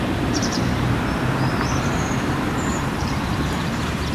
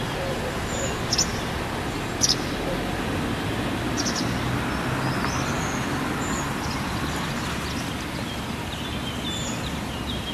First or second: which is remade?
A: first